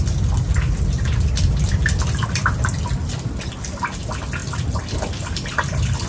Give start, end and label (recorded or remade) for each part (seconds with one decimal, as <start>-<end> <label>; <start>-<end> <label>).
0.0-6.1 recorded